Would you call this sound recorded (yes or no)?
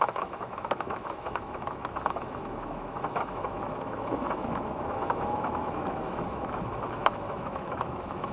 no